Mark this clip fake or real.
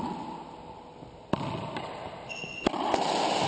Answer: real